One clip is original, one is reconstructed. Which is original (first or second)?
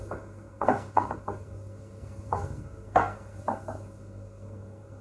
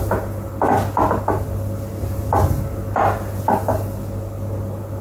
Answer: second